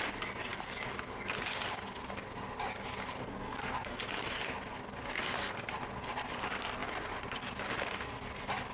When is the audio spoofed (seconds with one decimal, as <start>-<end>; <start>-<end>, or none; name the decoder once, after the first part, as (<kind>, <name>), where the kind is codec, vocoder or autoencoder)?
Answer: 3.2-4.0 (codec, SNAC)